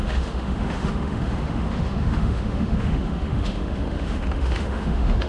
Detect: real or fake fake